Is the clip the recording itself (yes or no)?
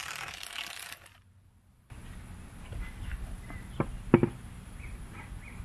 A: yes